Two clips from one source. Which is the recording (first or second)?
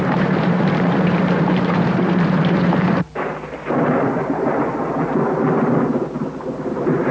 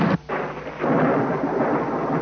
second